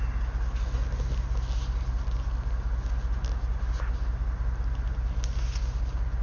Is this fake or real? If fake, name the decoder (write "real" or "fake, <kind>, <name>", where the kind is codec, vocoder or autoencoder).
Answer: real